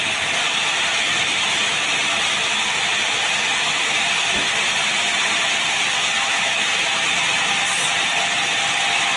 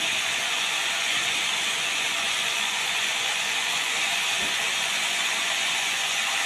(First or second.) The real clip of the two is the first